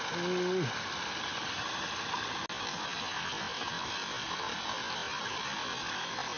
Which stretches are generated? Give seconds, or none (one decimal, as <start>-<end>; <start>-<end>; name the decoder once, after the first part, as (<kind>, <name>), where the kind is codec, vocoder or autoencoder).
none